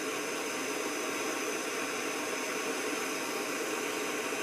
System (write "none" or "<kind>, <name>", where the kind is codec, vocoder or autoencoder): none